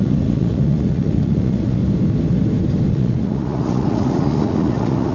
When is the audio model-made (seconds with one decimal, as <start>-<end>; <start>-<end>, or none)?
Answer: 0.0-1.8; 2.9-5.1